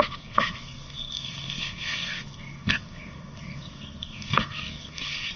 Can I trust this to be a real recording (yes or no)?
no